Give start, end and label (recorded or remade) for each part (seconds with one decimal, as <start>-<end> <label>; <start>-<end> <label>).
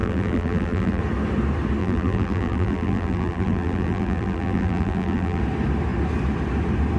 0.0-1.0 remade; 1.0-1.8 recorded; 1.8-5.4 remade; 5.4-7.0 recorded